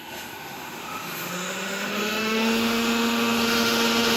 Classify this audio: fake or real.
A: fake